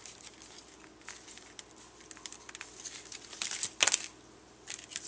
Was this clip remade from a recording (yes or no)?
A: no